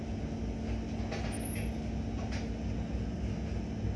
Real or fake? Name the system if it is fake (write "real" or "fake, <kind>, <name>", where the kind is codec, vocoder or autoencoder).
real